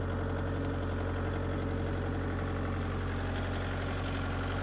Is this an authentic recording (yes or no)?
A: yes